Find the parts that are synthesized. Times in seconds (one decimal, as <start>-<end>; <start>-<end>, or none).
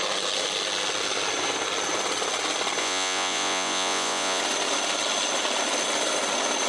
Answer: 2.8-4.4